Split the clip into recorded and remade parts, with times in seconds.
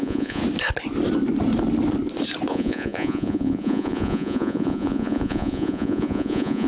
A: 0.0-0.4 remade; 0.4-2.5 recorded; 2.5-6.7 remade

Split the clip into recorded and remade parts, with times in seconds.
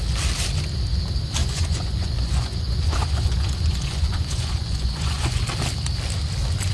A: 0.0-1.4 recorded; 1.4-5.4 remade; 5.4-6.7 recorded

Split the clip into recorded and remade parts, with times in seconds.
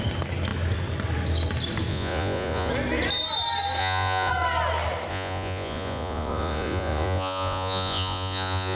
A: 0.0-1.9 recorded; 1.9-2.7 remade; 2.7-3.8 recorded; 3.8-4.3 remade; 4.3-5.1 recorded; 5.1-8.8 remade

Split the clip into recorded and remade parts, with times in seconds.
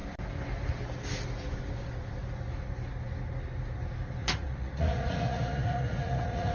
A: 0.0-4.2 recorded; 4.2-6.5 remade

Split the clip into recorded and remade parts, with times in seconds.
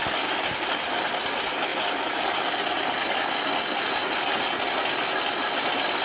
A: 0.0-6.0 recorded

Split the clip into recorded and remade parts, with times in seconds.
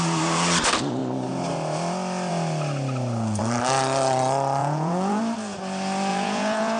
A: 0.0-4.6 recorded; 4.6-5.2 remade; 5.2-6.1 recorded; 6.1-6.8 remade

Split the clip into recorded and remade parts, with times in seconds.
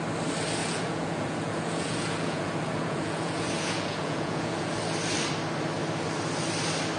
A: 0.0-0.6 recorded; 0.6-4.8 remade; 4.8-7.0 recorded